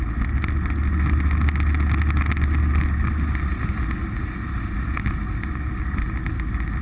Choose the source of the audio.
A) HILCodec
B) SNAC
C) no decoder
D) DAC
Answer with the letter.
C